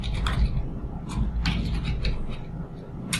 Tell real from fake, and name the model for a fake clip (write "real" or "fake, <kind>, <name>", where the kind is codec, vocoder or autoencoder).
real